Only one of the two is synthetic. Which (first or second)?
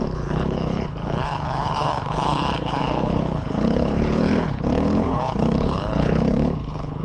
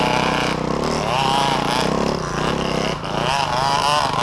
first